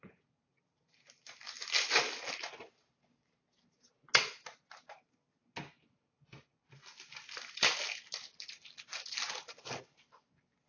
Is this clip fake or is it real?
real